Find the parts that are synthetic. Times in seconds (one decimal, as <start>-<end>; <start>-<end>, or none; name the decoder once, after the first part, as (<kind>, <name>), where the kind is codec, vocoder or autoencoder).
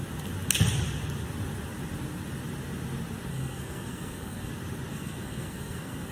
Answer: 3.3-4.5 (codec, SNAC); 4.9-6.1